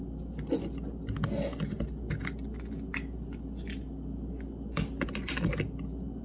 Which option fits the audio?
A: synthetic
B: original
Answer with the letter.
B